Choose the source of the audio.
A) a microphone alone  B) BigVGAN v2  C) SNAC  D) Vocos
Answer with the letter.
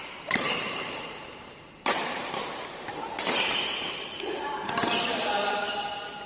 B